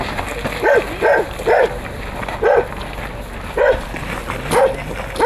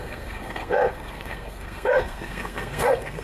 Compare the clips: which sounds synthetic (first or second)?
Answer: second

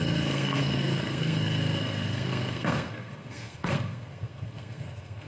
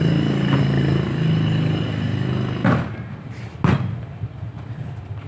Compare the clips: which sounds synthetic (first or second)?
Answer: first